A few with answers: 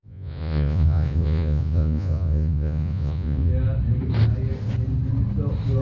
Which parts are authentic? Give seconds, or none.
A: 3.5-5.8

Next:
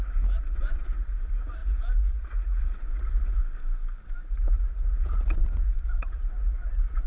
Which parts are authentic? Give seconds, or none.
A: 3.4-4.3